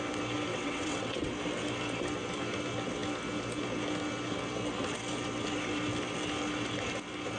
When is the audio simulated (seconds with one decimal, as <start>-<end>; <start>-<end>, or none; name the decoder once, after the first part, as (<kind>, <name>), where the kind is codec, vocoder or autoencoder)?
0.5-1.3 (vocoder, WaveNeXt)